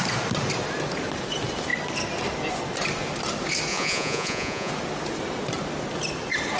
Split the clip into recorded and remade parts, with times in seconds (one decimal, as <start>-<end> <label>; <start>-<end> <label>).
0.0-3.7 recorded; 3.7-4.7 remade; 4.7-6.6 recorded